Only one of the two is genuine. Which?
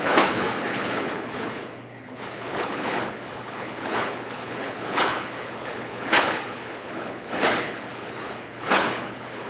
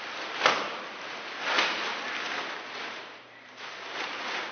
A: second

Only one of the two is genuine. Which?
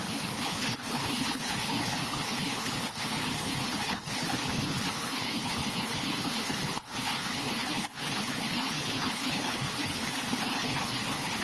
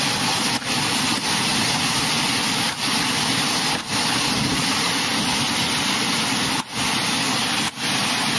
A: second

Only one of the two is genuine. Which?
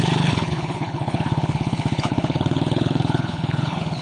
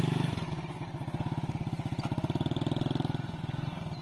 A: second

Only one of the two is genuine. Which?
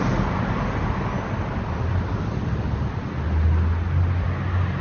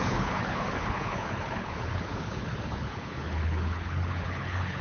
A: first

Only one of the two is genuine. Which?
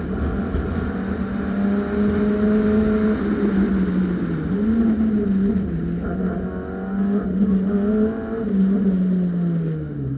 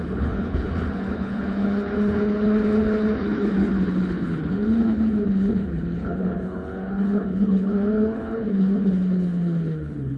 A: first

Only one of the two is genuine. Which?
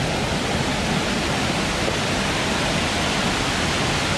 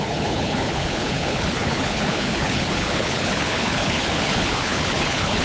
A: first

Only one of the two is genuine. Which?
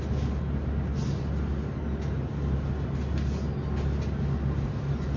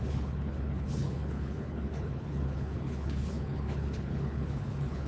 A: first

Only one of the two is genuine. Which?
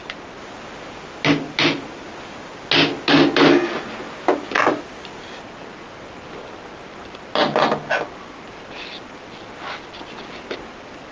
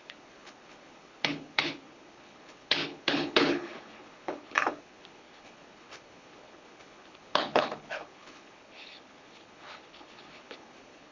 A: first